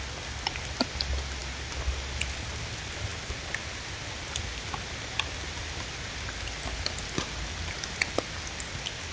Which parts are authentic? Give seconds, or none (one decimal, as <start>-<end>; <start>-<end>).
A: 0.0-9.1